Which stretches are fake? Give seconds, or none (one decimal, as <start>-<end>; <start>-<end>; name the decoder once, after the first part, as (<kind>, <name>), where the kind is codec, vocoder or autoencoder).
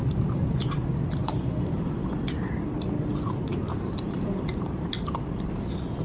1.2-2.1 (vocoder, BigVGAN v2); 3.5-4.9